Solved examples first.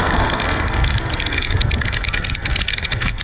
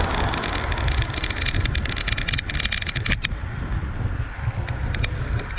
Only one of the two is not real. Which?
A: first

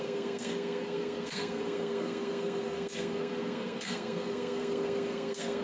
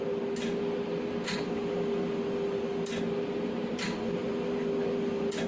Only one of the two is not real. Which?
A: first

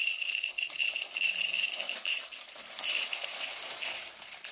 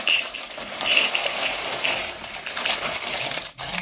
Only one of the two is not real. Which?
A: first